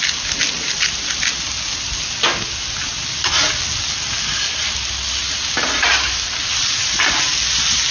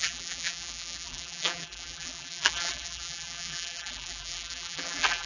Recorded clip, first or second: first